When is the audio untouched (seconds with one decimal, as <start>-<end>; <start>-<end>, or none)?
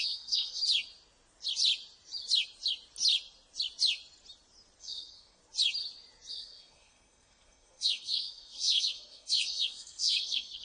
0.6-4.8; 5.4-6.3